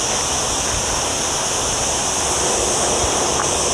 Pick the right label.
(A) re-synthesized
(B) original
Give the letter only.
B